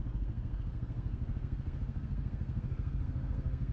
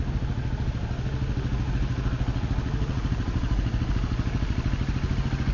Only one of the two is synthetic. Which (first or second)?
first